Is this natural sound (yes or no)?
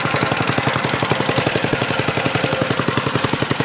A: yes